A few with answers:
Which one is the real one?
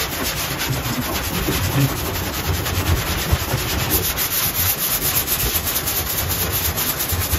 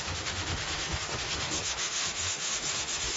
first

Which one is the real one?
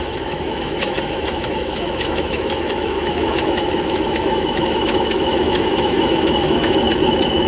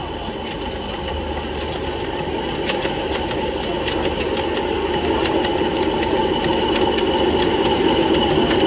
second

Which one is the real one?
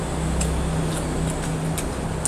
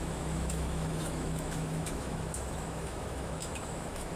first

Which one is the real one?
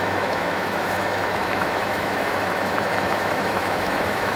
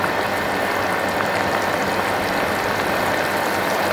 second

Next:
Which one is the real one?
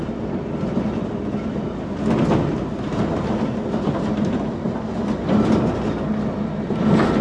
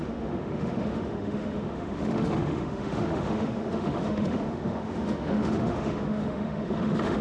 first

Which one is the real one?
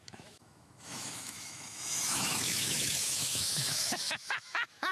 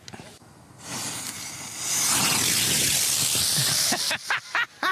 second